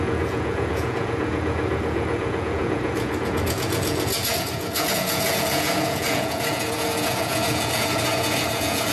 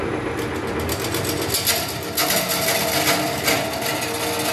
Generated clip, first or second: first